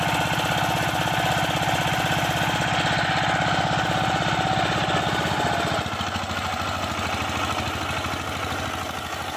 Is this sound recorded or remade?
recorded